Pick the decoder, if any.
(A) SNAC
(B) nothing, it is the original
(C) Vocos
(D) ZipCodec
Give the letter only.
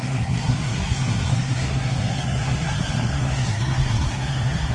A